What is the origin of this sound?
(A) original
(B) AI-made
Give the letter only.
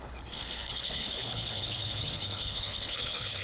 B